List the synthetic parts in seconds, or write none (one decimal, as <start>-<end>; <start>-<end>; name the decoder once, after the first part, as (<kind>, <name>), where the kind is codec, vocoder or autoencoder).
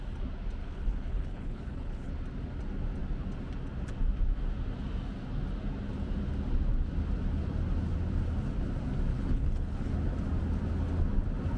0.6-2.1 (codec, HILCodec); 9.1-9.9